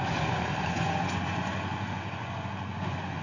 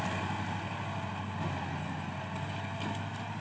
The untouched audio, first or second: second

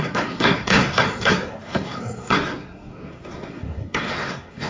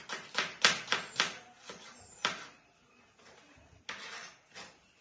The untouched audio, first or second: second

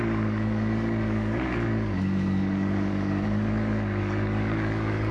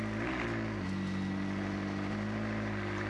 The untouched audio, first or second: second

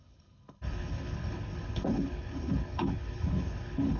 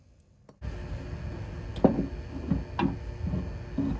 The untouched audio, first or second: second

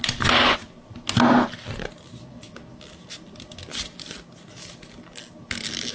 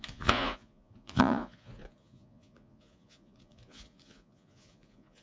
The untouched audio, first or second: first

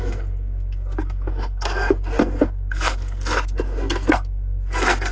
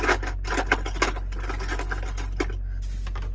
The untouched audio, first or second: second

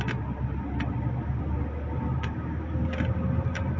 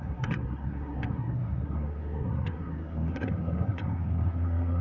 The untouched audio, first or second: first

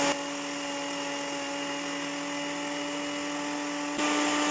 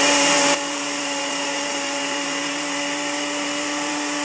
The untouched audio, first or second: first